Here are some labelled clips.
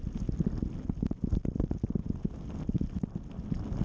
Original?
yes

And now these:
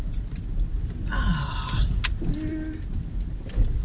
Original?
yes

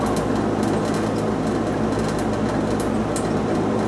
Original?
yes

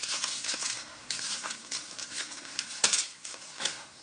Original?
no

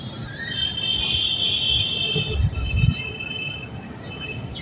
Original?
yes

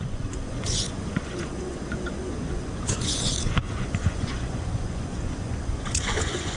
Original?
no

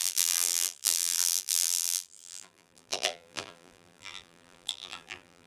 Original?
no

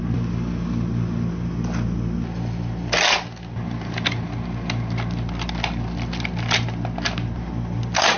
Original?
yes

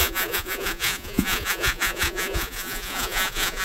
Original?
no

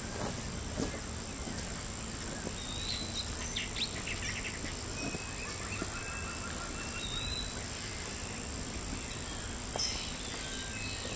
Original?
yes